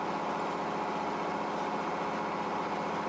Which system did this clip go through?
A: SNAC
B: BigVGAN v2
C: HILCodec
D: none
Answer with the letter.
D